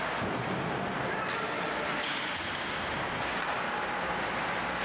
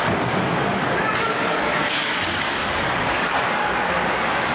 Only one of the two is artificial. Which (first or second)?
second